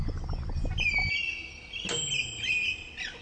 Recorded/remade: recorded